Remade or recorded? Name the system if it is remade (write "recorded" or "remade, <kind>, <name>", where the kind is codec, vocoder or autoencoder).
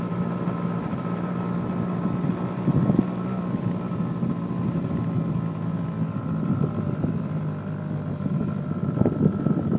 recorded